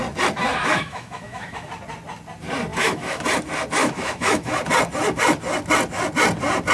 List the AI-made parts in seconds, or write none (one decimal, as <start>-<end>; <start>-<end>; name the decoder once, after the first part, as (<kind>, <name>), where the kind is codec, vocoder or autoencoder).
0.5-1.7 (autoencoder, DAC-VAE); 2.7-3.2; 3.8-4.5